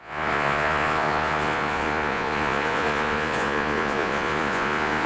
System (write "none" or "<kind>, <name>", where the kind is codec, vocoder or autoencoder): vocoder, Vocos